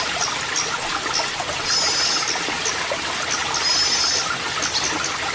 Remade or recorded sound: recorded